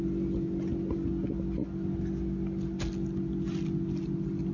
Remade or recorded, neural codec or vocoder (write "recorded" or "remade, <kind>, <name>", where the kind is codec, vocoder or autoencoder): recorded